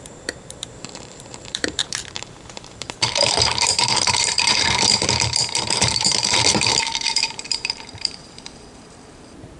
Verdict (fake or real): fake